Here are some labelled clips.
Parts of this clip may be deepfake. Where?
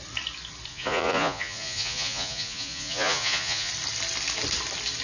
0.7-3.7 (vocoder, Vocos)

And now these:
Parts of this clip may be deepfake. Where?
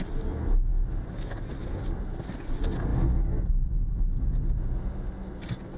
none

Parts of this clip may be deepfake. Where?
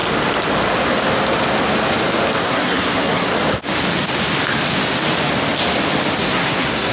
2.4-3.3 (codec, SNAC); 6.2-6.9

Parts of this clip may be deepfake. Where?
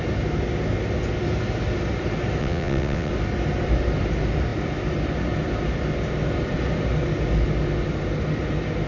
2.4-3.1 (vocoder, WaveNeXt)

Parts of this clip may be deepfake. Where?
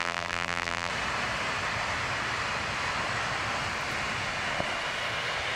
0.0-0.9 (vocoder, BigVGAN v2)